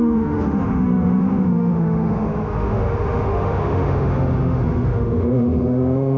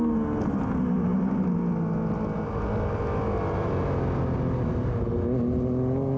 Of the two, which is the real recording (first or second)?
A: second